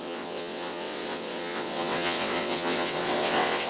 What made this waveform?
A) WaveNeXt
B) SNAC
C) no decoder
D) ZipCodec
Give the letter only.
A